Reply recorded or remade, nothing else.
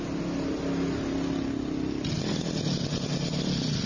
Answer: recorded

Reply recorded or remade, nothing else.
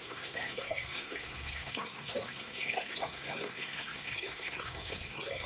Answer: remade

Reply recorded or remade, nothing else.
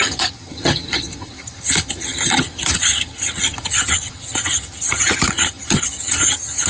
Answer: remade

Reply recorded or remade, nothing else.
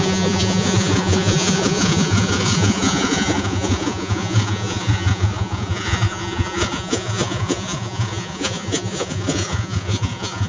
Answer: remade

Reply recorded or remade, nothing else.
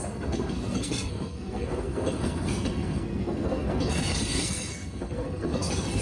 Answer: remade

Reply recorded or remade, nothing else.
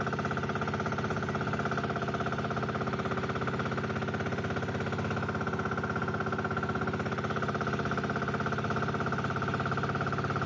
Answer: recorded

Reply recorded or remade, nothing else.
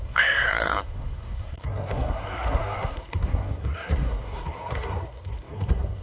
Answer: remade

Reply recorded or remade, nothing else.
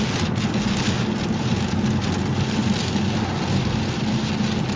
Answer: recorded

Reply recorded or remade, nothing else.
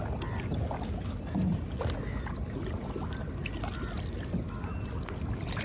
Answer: recorded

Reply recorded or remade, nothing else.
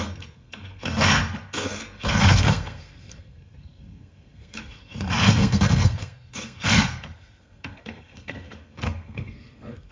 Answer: remade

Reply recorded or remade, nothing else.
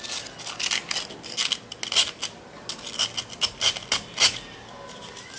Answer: recorded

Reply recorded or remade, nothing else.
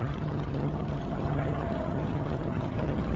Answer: remade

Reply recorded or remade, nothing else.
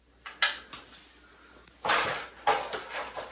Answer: recorded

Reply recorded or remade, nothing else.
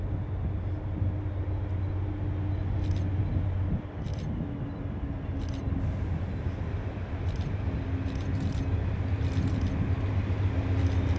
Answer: recorded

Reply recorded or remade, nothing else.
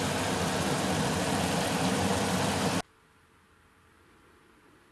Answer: recorded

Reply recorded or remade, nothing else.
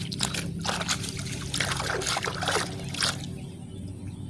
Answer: recorded